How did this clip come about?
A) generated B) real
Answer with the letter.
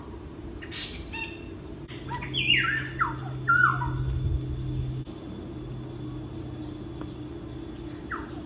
B